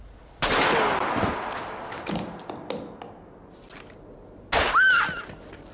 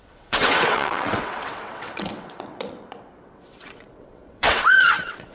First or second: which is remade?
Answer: second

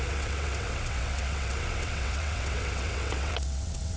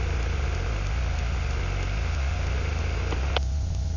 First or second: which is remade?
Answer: first